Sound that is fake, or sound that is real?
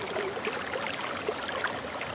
real